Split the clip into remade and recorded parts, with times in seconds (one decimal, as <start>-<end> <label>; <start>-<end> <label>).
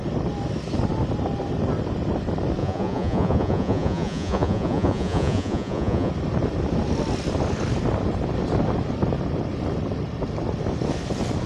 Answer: 0.0-2.6 recorded; 2.6-6.1 remade; 6.1-11.5 recorded